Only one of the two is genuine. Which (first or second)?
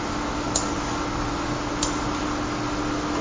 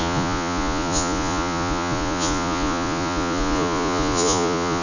first